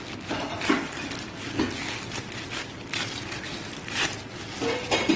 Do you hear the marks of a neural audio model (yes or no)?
no